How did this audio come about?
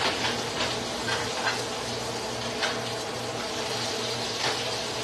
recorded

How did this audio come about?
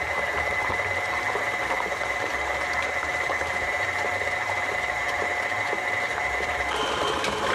remade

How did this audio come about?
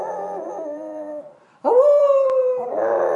remade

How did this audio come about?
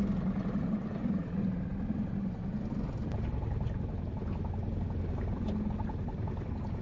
recorded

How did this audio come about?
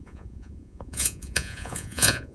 remade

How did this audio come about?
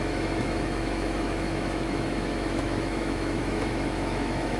remade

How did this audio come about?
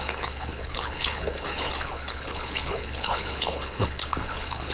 remade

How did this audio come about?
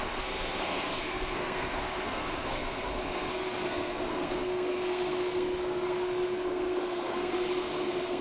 remade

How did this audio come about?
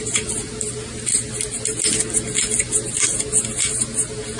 recorded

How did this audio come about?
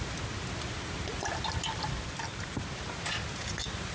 recorded